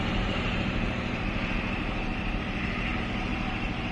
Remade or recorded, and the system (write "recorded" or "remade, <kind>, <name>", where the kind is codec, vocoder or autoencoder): remade, vocoder, BigVGAN v2